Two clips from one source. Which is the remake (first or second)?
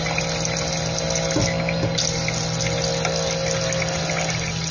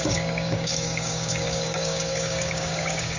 second